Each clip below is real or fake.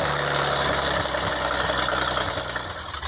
real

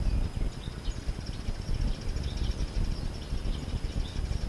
real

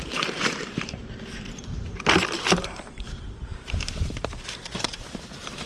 fake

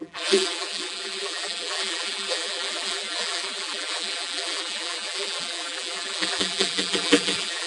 fake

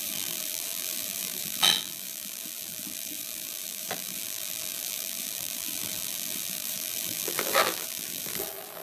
fake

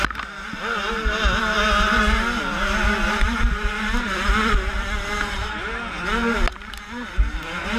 real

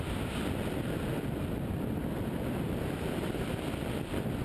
fake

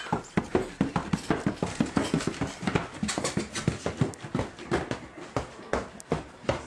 real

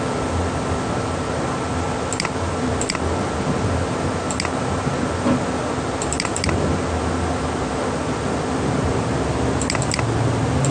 real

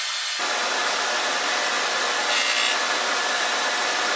real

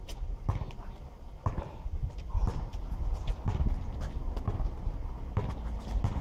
real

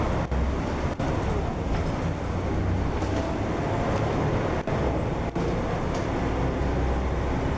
real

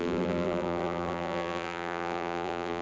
fake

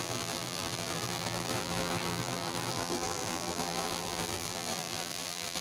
fake